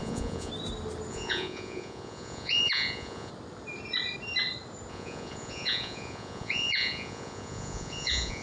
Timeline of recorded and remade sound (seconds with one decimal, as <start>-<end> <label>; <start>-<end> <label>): 0.0-0.5 remade; 0.5-1.1 recorded; 1.1-3.3 remade; 3.3-4.9 recorded; 4.9-8.4 remade